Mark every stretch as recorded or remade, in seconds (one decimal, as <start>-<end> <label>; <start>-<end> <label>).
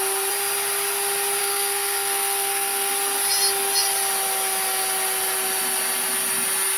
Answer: 0.0-1.4 recorded; 1.4-2.9 remade; 2.9-6.8 recorded